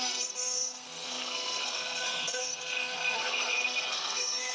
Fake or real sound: fake